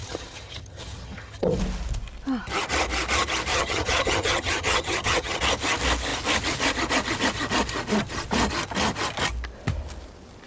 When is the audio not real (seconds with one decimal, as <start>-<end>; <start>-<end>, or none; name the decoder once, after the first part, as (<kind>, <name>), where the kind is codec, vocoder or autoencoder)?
0.0-1.6 (vocoder, HiFi-GAN); 3.5-5.4